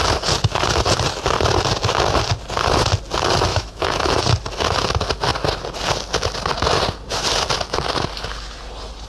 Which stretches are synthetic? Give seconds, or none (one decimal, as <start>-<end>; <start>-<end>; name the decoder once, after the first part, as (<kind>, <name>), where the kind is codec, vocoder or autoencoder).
3.5-4.2 (autoencoder, DAC-VAE)